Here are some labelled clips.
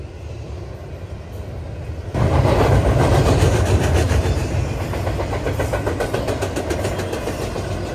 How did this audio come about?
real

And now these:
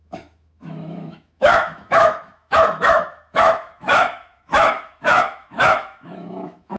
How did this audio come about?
fake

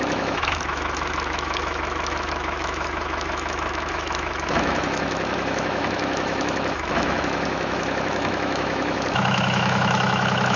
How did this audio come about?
fake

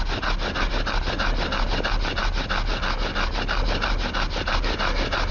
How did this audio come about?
real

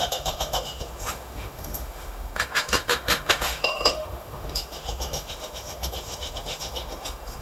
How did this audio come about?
fake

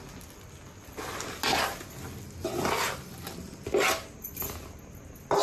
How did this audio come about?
real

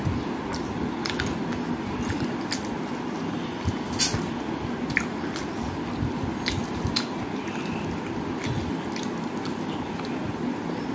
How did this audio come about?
real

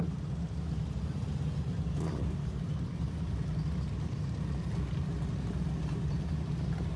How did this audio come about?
real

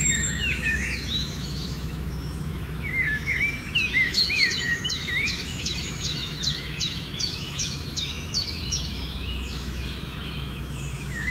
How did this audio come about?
fake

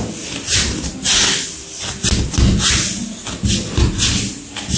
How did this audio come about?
real